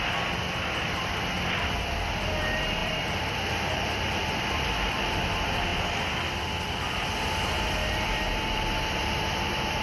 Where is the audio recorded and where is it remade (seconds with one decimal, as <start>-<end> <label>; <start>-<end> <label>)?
0.0-5.7 remade; 5.7-7.8 recorded; 7.8-9.8 remade